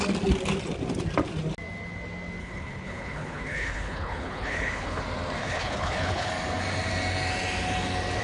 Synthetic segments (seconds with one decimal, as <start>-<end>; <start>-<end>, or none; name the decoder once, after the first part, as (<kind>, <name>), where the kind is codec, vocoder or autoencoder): 2.4-5.0 (codec, HILCodec); 5.4-6.3